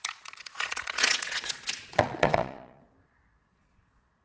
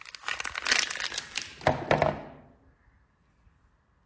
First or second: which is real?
second